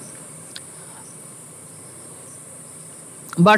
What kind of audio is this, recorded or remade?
remade